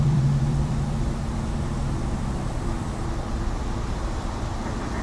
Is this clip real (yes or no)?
no